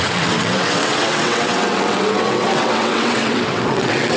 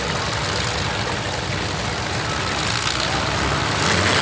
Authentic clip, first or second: second